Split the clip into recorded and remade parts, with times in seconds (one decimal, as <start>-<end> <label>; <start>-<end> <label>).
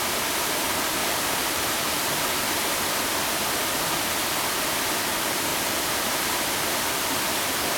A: 0.0-1.0 recorded; 1.0-2.2 remade; 2.2-5.5 recorded; 5.5-6.4 remade; 6.4-7.8 recorded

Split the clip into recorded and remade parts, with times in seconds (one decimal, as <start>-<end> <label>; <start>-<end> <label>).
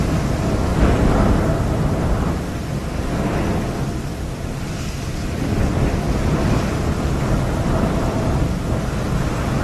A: 0.0-0.7 recorded; 0.7-2.7 remade; 2.7-4.1 recorded; 4.1-8.8 remade; 8.8-9.6 recorded